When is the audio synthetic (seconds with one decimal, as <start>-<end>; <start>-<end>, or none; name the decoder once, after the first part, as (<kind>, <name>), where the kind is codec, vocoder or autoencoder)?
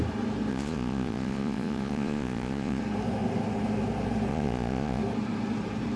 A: 0.5-2.8 (vocoder, Vocos); 4.3-5.0